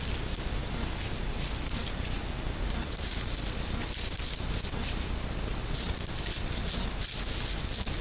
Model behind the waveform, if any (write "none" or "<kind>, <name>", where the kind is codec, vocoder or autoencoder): none